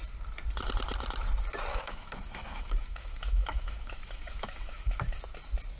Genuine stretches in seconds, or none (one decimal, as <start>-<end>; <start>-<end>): 0.0-1.7; 5.2-5.8